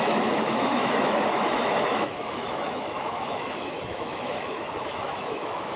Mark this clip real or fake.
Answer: fake